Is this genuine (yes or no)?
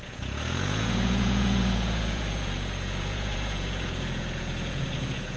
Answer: no